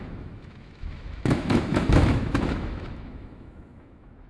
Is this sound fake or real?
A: fake